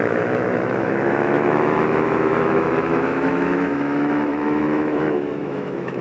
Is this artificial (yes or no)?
yes